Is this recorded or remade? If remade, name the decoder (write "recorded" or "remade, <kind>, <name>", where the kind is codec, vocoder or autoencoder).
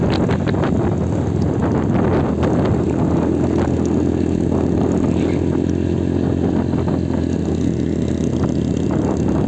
recorded